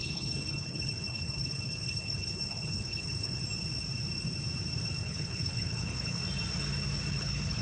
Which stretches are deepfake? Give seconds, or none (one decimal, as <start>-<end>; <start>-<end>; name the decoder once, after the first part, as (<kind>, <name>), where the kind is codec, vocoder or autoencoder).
0.0-3.4 (codec, HILCodec); 4.9-6.2; 7.1-7.6